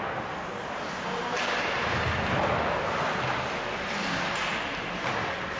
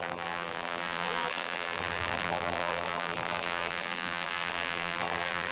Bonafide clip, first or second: first